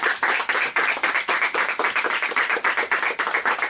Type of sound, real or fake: real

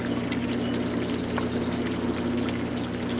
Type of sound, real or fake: real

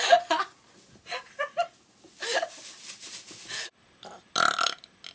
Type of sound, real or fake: real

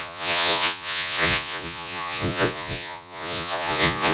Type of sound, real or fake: fake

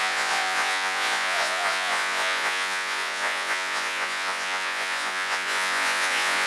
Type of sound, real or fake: fake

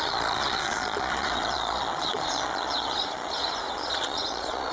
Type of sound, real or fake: fake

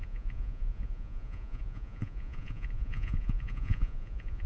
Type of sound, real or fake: fake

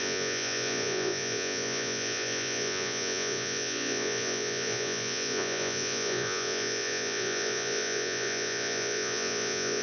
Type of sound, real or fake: fake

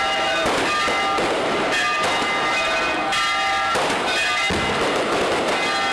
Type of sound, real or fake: real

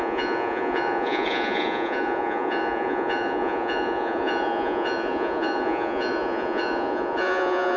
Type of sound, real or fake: fake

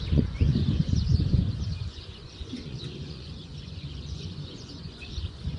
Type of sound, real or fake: fake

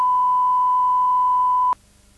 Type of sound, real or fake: real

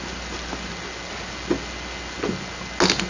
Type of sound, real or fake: real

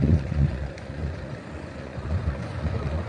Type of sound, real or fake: fake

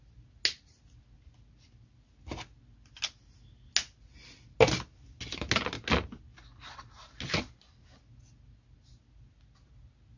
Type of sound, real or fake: real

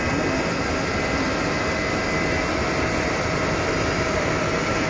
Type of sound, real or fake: real